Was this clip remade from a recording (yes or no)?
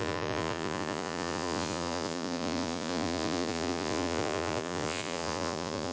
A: yes